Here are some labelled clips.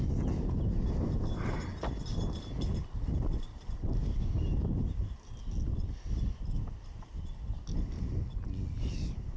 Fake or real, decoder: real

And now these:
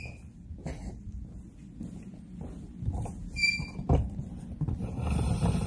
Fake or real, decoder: real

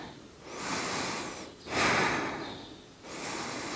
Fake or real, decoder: real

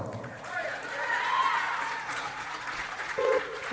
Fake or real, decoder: fake, vocoder, Vocos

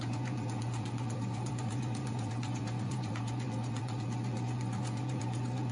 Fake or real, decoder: fake, vocoder, Vocos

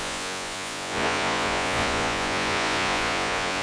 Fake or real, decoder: fake, vocoder, Vocos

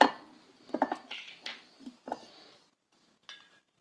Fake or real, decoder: real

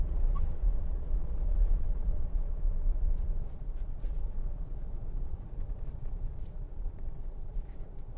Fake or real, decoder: fake, vocoder, Vocos